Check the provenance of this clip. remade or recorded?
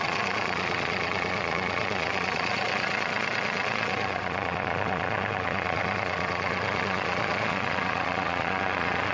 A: remade